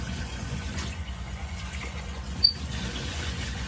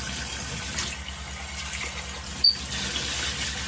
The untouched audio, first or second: second